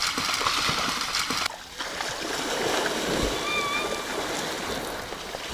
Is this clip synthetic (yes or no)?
no